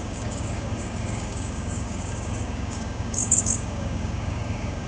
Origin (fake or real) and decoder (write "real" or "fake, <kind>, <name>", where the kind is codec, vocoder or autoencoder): fake, codec, DAC